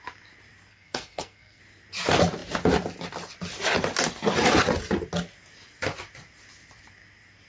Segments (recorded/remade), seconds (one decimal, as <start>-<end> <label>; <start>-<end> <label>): 0.0-0.7 recorded; 0.7-1.6 remade; 1.6-7.5 recorded